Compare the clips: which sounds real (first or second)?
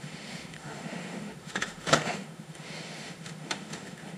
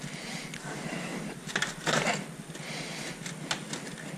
second